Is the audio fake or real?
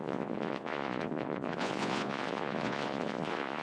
fake